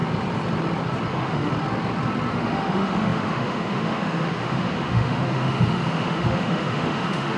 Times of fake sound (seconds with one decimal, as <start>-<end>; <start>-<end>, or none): 1.1-1.5; 2.3-7.4